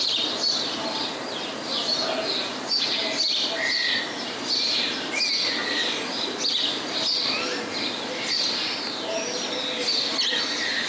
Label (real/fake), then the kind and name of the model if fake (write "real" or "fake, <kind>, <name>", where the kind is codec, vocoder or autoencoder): real